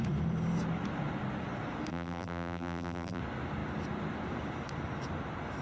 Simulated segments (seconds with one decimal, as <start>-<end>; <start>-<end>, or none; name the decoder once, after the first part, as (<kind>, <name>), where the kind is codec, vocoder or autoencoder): 1.9-3.2 (vocoder, BigVGAN v2)

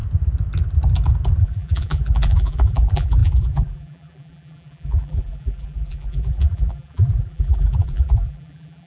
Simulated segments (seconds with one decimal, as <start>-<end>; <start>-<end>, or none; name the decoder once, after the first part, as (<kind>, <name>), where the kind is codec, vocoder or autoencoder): 1.4-8.9 (vocoder, BigVGAN v2)

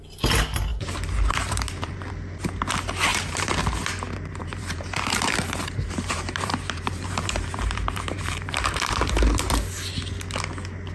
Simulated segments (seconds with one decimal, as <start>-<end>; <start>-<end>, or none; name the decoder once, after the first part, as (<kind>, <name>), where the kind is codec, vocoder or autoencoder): 0.7-2.1 (vocoder, BigVGAN v2); 3.1-3.6; 4.4-8.9

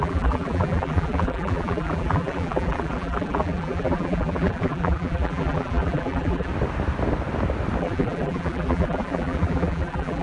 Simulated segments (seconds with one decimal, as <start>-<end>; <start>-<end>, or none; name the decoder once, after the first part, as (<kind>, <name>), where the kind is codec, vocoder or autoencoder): 0.0-6.5 (vocoder, BigVGAN v2); 7.8-10.2

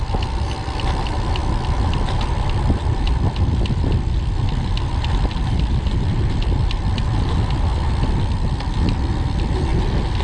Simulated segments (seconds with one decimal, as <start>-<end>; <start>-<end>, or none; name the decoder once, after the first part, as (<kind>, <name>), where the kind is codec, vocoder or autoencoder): none

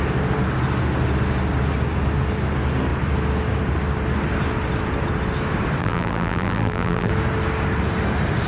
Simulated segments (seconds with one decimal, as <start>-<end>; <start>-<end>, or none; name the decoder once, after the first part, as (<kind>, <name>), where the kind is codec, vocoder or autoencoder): 5.8-7.1 (vocoder, BigVGAN v2)